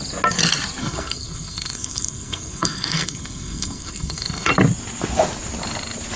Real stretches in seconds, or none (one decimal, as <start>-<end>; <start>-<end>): 0.0-0.8; 4.5-6.2